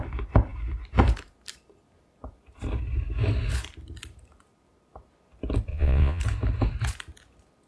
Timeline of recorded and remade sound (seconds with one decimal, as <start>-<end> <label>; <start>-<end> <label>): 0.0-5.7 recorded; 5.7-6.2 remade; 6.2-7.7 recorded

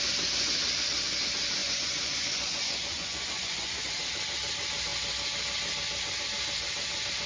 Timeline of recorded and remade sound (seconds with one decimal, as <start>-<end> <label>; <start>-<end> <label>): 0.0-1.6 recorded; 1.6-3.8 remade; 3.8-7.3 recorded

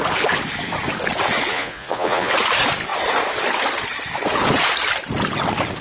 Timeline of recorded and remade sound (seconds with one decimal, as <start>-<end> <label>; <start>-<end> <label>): 0.0-1.5 recorded; 1.5-2.3 remade; 2.3-5.8 recorded